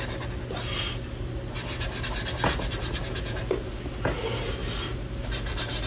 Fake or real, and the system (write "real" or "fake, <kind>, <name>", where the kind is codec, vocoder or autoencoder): real